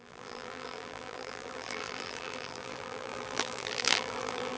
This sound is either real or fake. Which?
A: fake